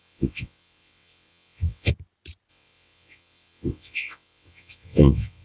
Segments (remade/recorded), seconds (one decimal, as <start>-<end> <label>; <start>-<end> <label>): 0.0-1.9 remade; 1.9-2.5 recorded; 2.5-5.4 remade